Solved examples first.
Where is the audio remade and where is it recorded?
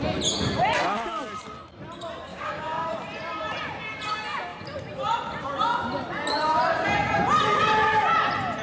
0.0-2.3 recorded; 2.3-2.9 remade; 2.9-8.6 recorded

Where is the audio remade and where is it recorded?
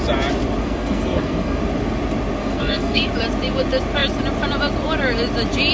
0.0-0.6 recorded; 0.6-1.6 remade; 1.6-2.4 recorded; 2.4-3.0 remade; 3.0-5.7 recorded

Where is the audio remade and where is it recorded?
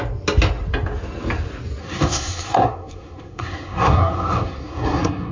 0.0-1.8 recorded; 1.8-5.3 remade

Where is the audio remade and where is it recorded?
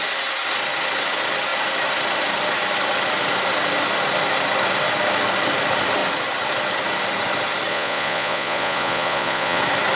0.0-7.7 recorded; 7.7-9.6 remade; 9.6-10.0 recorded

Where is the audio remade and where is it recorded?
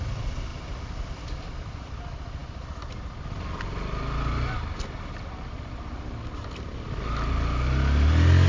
0.0-8.5 recorded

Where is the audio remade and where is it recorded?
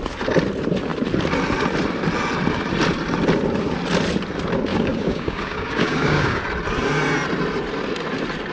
0.0-4.7 recorded; 4.7-6.4 remade; 6.4-8.5 recorded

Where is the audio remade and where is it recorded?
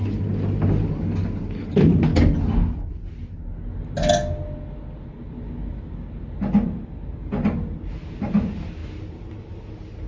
0.0-10.1 recorded